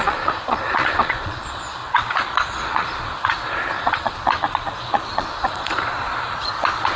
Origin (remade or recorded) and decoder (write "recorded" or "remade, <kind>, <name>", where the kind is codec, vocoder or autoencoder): remade, vocoder, Vocos